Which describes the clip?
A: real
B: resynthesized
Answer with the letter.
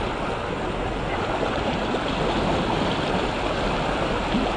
A